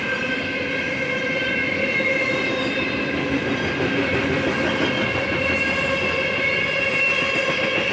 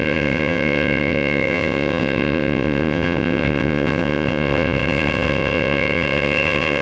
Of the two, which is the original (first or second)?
first